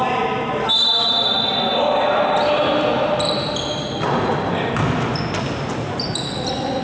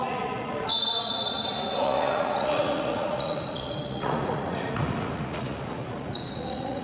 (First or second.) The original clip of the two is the first